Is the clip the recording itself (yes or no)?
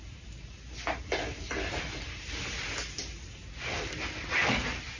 yes